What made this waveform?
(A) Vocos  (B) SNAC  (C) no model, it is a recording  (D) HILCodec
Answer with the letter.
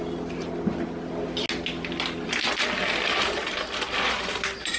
C